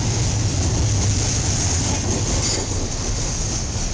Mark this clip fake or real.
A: real